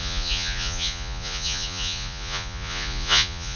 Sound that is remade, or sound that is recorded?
remade